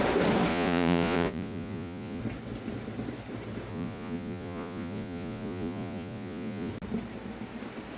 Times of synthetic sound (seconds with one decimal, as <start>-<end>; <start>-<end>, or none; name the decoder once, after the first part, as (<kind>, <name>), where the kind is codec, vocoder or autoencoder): 0.5-2.2 (vocoder, Vocos); 3.7-6.7